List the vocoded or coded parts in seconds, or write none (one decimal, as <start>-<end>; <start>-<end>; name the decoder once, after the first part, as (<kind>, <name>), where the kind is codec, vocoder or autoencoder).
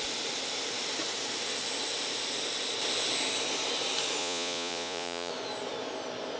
4.2-5.3 (vocoder, Vocos)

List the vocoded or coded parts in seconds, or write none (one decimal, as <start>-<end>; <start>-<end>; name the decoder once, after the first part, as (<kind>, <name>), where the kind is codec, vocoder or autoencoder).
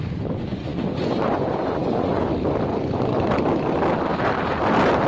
0.5-2.3 (vocoder, Vocos); 2.7-3.3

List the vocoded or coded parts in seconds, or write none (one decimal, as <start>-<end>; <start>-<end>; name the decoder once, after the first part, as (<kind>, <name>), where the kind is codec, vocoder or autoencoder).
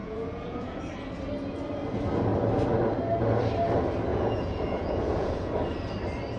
0.0-0.8 (vocoder, Vocos); 4.1-5.5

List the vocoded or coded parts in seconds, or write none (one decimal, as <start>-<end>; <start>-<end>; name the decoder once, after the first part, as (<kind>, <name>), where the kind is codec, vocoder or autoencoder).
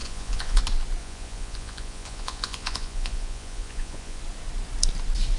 0.0-0.6 (vocoder, Vocos); 1.0-4.2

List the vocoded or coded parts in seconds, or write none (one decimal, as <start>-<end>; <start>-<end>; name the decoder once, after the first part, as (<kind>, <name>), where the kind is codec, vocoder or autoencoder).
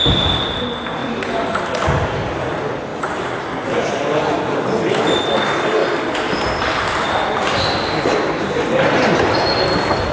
none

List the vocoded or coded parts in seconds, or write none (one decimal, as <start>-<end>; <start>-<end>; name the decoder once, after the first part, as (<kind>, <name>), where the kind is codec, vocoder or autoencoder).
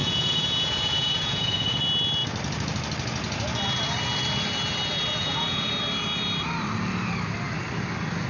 0.0-1.8 (vocoder, Vocos); 5.2-5.7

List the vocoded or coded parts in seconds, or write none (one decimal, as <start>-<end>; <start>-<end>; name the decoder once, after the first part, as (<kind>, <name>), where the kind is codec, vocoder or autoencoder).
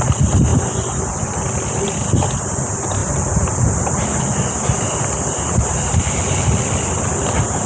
0.5-1.3 (vocoder, Vocos)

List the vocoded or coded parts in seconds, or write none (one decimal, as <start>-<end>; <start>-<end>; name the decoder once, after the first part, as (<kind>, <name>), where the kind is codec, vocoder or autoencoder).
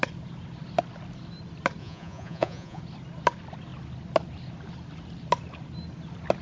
1.8-2.8 (vocoder, Vocos)